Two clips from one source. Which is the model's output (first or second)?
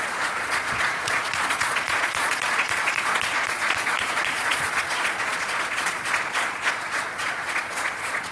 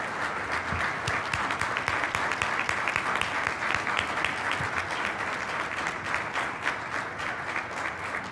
first